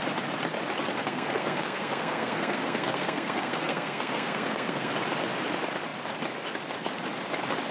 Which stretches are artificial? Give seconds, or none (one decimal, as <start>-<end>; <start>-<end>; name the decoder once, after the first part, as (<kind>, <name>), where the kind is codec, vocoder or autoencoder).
1.0-4.9 (codec, SNAC)